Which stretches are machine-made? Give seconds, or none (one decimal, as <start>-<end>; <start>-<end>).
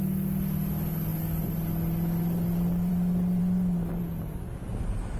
none